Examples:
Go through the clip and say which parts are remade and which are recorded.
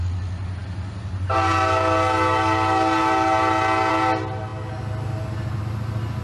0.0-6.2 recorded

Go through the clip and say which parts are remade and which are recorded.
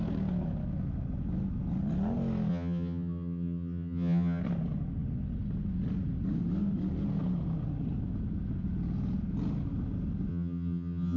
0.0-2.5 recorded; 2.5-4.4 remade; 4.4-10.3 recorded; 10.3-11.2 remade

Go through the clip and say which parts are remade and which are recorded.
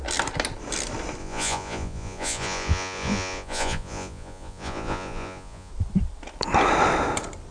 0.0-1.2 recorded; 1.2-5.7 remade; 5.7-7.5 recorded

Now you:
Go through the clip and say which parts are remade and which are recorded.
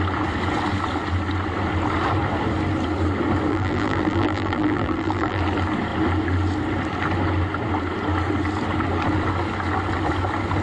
0.0-3.5 recorded; 3.5-5.4 remade; 5.4-10.6 recorded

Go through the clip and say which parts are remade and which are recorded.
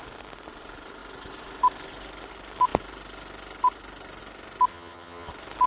0.0-4.7 recorded; 4.7-5.3 remade; 5.3-5.7 recorded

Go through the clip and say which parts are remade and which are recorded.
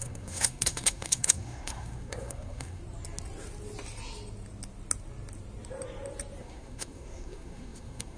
0.0-2.8 remade; 2.8-6.4 recorded; 6.4-8.2 remade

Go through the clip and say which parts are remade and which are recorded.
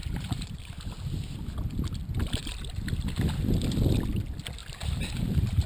0.0-0.7 remade; 0.7-4.6 recorded; 4.6-5.7 remade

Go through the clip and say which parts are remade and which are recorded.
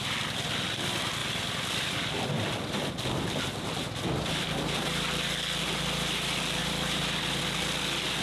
0.0-1.2 recorded; 1.2-2.9 remade; 2.9-6.6 recorded; 6.6-7.4 remade; 7.4-8.2 recorded